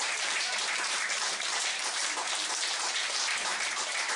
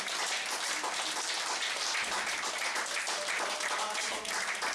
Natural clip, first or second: second